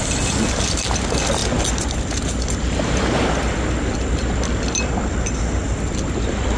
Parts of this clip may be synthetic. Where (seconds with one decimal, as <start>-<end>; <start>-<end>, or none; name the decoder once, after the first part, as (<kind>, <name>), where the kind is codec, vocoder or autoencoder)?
none